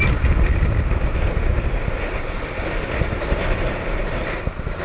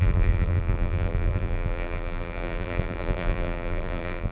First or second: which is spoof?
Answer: second